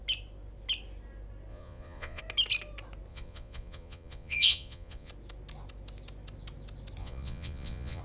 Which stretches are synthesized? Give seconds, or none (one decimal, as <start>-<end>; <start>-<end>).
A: 1.5-2.2; 3.1-5.1; 7.0-8.0